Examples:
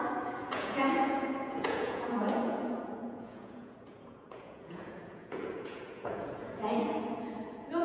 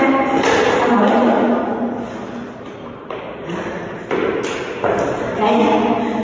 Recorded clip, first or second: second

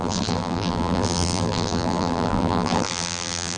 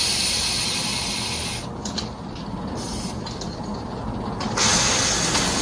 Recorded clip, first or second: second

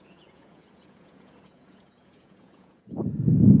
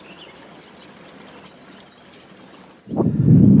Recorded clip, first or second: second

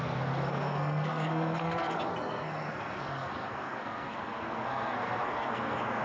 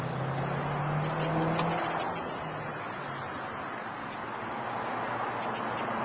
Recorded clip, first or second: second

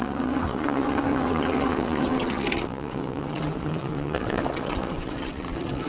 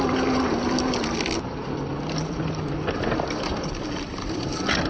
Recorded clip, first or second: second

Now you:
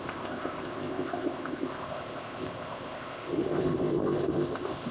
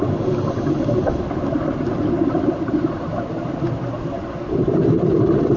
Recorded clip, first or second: second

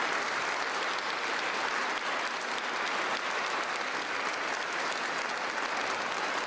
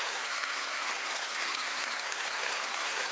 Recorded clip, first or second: first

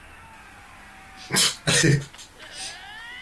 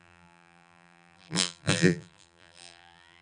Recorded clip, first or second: first